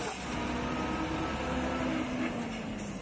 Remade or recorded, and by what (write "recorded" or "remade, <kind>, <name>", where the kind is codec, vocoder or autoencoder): recorded